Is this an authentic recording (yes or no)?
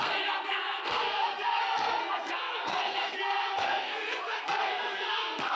no